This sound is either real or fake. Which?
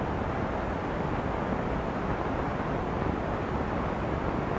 real